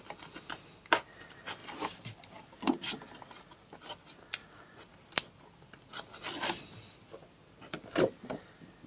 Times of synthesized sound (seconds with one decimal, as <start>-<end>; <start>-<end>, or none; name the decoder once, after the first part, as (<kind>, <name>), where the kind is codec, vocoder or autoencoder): none